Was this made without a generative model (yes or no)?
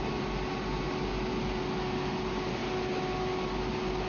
yes